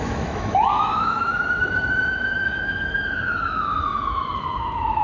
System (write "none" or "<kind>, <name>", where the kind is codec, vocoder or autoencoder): autoencoder, DAC-VAE